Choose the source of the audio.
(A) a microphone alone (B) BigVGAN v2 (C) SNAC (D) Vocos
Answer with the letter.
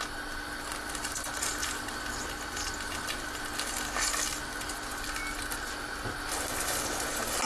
A